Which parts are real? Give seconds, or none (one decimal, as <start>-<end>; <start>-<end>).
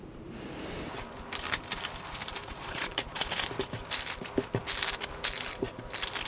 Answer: 0.0-2.4; 3.3-6.3